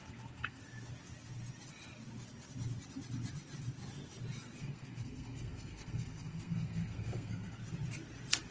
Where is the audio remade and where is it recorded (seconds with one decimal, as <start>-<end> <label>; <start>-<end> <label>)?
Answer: 0.0-0.6 remade; 0.6-4.6 recorded; 4.6-7.6 remade; 7.6-8.5 recorded